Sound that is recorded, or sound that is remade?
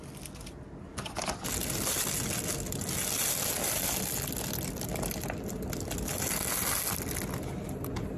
recorded